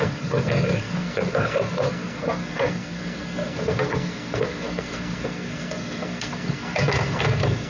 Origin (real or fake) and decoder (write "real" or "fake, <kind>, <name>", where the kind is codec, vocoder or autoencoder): fake, codec, SNAC